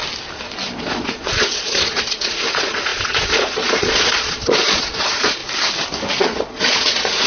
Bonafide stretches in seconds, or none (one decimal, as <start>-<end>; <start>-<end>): 0.0-0.8; 5.4-6.2